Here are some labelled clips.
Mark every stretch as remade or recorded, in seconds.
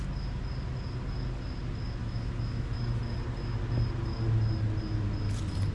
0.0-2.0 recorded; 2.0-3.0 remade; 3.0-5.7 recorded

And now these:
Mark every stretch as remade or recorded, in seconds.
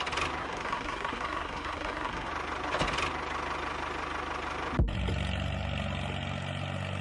0.0-0.4 recorded; 0.4-2.3 remade; 2.3-7.0 recorded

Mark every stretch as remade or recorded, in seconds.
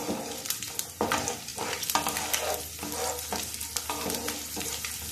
0.0-5.1 recorded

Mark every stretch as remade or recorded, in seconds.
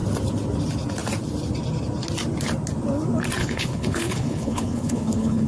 0.0-3.4 recorded; 3.4-5.5 remade